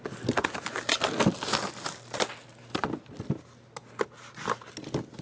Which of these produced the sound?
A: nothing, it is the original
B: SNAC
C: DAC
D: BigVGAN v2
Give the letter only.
A